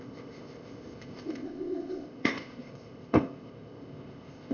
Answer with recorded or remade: remade